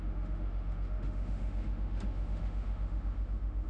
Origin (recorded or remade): remade